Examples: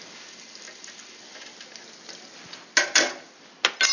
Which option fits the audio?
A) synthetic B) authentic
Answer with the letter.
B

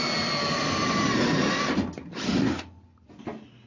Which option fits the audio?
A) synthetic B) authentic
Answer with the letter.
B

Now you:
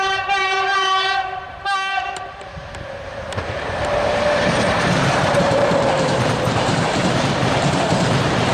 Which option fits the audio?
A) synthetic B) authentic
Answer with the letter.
A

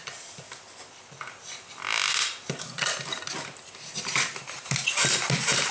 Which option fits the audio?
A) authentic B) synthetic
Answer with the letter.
A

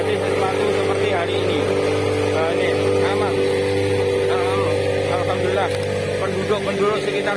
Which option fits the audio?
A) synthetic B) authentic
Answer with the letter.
B